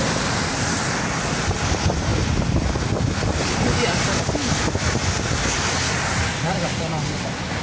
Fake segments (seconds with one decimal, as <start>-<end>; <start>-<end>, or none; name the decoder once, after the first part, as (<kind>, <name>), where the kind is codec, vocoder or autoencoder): none